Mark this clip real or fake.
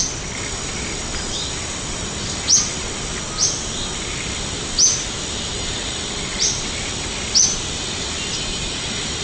real